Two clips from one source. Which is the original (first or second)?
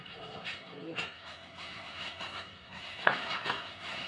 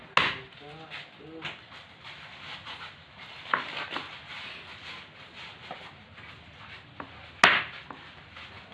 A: second